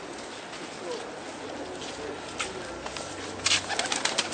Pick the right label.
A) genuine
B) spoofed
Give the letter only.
A